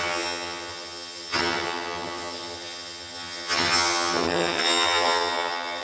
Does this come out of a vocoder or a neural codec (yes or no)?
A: yes